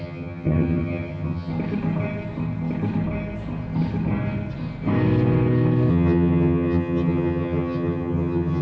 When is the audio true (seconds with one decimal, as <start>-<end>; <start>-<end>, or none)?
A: 1.5-5.9

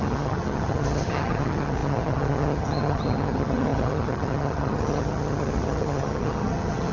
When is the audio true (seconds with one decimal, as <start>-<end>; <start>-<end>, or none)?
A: none

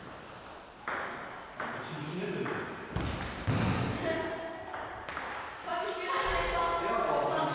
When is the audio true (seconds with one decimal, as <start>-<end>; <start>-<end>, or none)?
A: 0.0-7.5